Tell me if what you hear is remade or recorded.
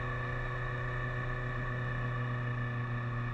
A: recorded